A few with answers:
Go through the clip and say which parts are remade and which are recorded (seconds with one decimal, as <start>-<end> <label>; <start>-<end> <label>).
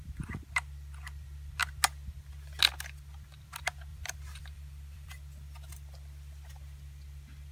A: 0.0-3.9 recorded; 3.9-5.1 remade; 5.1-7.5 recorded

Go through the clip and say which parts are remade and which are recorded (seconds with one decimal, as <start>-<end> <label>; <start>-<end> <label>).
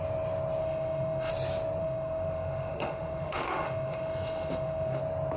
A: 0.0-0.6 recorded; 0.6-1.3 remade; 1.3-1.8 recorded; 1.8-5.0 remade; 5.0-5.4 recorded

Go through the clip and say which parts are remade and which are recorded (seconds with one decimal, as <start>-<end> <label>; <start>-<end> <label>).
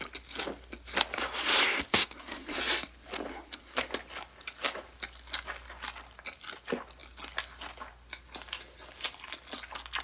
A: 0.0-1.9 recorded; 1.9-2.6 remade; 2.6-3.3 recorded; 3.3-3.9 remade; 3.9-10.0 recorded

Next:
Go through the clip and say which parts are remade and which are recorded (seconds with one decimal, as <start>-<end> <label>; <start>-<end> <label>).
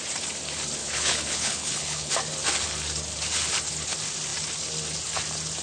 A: 0.0-0.8 recorded; 0.8-2.1 remade; 2.1-5.6 recorded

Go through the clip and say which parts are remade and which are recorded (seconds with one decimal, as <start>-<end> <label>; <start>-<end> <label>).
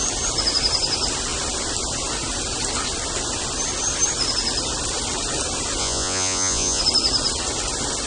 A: 0.0-5.8 recorded; 5.8-6.8 remade; 6.8-8.1 recorded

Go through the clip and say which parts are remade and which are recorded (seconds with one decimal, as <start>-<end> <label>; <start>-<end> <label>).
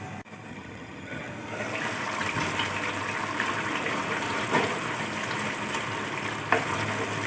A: 0.0-0.5 recorded; 0.5-1.3 remade; 1.3-7.3 recorded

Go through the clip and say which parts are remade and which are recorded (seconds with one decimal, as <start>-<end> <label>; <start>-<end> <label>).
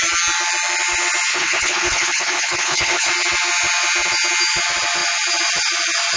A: 0.0-1.3 recorded; 1.3-3.1 remade; 3.1-6.2 recorded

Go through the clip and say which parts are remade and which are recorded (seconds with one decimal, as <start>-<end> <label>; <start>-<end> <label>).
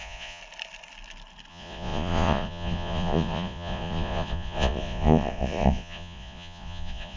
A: 0.0-0.4 remade; 0.4-1.5 recorded; 1.5-7.2 remade